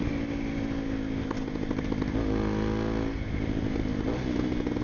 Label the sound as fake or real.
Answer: real